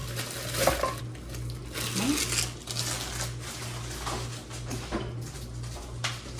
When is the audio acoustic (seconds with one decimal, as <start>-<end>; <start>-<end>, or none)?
0.0-6.4